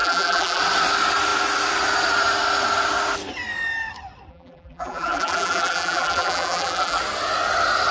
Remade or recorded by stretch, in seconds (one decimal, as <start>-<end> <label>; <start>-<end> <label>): 0.0-0.6 remade; 0.6-4.3 recorded; 4.3-7.0 remade; 7.0-7.9 recorded